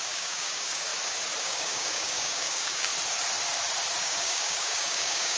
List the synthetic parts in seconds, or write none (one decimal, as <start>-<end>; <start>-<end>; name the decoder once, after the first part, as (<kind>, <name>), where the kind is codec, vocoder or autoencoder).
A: 0.0-0.9 (codec, DAC); 1.4-2.9; 4.0-5.4